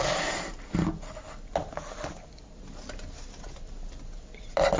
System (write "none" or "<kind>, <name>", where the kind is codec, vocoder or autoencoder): none